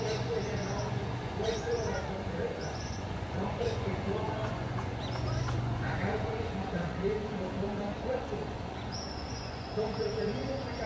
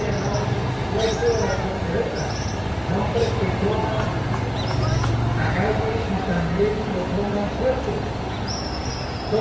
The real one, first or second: second